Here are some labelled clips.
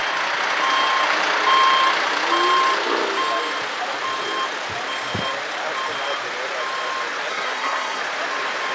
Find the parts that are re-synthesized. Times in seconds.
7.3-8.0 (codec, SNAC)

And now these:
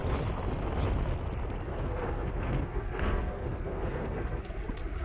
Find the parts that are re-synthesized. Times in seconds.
1.7-4.4 (codec, SNAC)

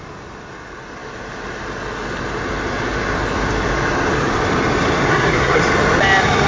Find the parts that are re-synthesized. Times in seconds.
5.1-5.6 (codec, SNAC)

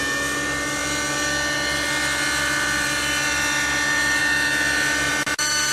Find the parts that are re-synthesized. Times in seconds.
none

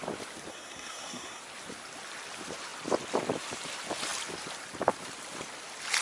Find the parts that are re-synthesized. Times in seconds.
0.5-1.4 (codec, SNAC)